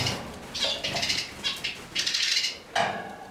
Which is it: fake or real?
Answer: real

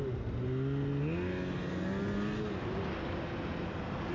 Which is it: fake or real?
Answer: real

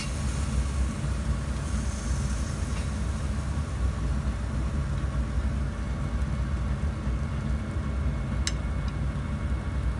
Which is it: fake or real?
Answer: real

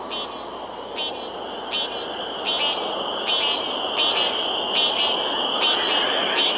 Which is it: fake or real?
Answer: real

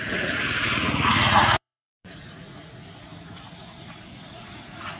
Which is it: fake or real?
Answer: fake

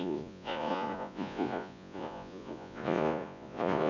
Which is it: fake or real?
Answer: fake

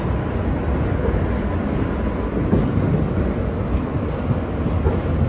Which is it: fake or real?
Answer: real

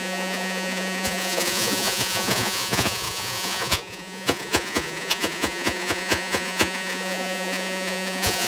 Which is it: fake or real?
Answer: fake